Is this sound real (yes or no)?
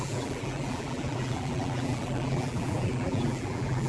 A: no